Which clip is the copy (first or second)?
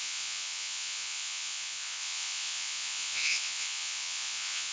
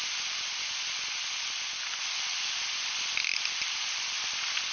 first